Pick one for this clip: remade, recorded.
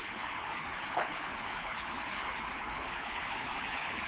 remade